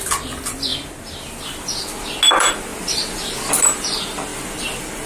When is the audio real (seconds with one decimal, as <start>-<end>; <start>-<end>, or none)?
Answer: 0.7-2.3; 2.7-3.5; 4.3-5.1